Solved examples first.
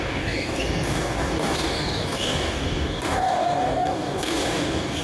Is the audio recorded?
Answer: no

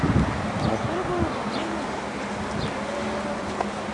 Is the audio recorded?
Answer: yes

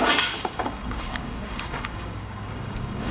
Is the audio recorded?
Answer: no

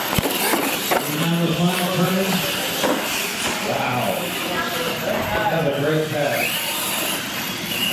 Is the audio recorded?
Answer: yes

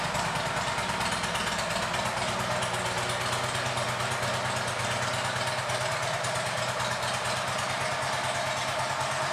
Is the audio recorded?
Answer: yes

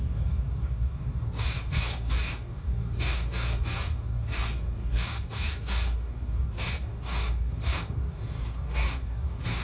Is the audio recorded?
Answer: no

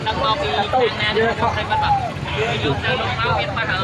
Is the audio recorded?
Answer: yes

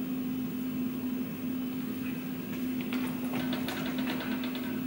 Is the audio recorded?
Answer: yes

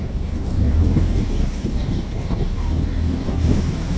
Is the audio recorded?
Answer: no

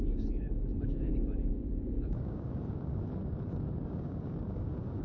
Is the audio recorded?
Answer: no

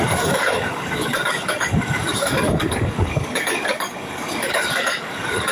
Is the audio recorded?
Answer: no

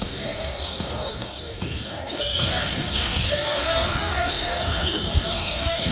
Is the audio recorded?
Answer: no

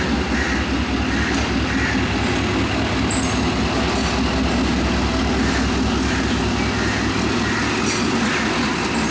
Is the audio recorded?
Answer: yes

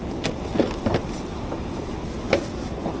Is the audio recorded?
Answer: yes